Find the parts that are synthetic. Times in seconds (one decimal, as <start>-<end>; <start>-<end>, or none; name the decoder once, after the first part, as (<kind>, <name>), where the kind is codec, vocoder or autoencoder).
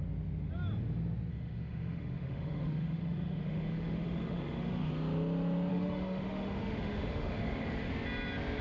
1.3-4.9 (autoencoder, DAC-VAE); 5.7-7.9